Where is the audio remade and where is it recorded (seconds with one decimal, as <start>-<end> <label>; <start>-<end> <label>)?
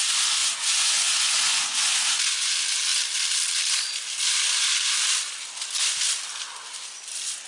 0.0-0.4 recorded; 0.4-2.5 remade; 2.5-7.5 recorded